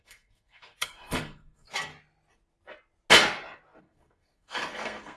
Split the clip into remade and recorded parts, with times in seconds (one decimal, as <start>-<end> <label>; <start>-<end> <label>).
0.0-1.9 remade; 1.9-3.8 recorded; 3.8-5.2 remade

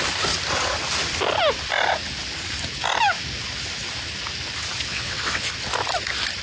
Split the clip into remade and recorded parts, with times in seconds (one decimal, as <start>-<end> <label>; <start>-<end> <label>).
0.0-4.9 recorded; 4.9-5.5 remade; 5.5-6.4 recorded

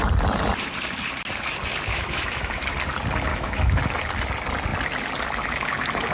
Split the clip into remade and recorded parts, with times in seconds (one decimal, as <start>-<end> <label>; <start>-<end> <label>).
0.0-1.9 recorded; 1.9-2.6 remade; 2.6-3.3 recorded; 3.3-3.8 remade; 3.8-6.1 recorded

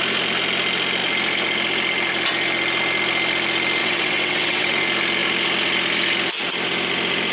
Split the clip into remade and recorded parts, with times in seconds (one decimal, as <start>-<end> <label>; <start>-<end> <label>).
0.0-3.8 recorded; 3.8-4.8 remade; 4.8-7.3 recorded

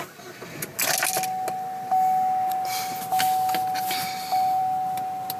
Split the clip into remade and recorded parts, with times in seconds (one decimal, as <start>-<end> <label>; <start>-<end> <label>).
0.0-5.4 recorded

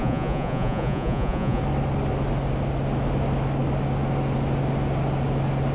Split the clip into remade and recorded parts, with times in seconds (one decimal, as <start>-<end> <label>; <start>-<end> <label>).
0.0-1.6 remade; 1.6-5.7 recorded